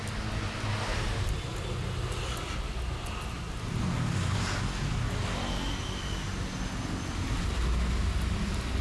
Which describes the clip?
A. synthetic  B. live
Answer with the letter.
B